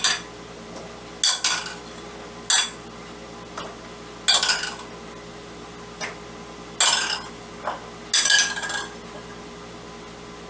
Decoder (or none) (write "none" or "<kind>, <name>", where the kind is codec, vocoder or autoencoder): none